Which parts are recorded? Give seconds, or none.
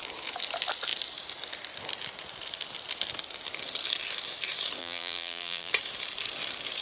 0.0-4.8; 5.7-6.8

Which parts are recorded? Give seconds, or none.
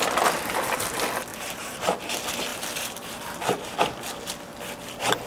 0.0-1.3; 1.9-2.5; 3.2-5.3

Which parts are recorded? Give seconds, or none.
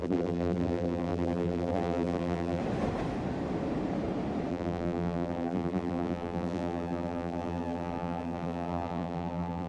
2.6-4.5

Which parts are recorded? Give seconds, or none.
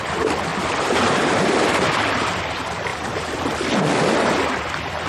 0.0-2.9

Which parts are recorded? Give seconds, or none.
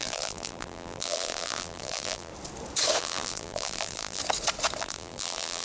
2.3-3.0; 4.2-4.8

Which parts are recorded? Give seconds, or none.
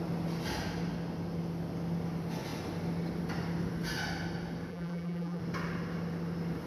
0.0-4.7; 5.4-6.7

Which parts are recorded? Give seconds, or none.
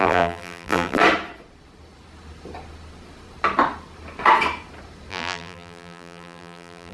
1.0-5.1